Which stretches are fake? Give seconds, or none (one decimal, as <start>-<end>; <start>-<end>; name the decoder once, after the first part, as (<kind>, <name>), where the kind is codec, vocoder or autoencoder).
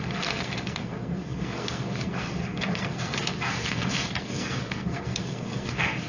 0.0-6.1 (codec, SNAC)